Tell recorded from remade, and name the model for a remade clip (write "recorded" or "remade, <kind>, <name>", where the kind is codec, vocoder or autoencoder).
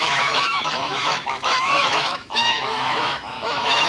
remade, autoencoder, DAC-VAE